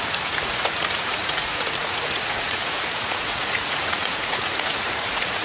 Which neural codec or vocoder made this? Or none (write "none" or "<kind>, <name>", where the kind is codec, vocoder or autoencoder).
vocoder, Vocos